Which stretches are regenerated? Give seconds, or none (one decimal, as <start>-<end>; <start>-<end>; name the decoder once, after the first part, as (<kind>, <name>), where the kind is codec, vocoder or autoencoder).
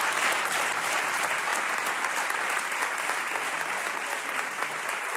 none